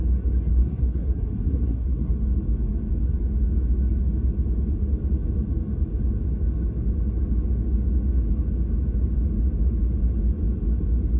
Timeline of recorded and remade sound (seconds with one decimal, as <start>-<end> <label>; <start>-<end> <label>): 0.0-0.5 recorded; 0.5-2.1 remade; 2.1-11.2 recorded